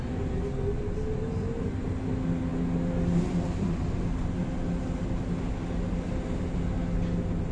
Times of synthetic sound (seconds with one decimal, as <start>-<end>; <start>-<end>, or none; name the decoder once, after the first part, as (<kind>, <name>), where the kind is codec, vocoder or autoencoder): none